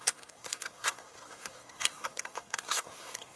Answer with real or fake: fake